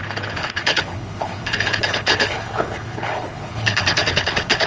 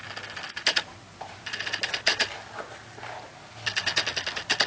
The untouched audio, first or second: second